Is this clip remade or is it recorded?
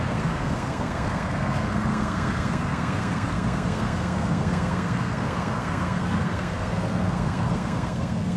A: remade